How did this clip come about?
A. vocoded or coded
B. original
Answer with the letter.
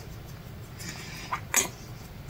B